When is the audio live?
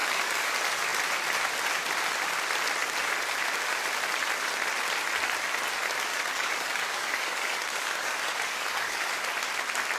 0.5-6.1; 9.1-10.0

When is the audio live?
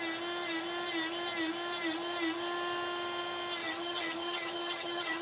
0.0-3.6